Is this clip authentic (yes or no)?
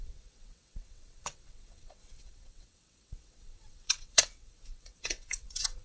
no